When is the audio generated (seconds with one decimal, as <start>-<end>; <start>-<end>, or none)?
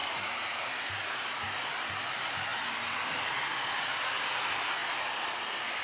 none